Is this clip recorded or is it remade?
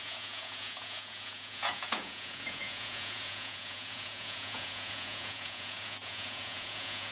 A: remade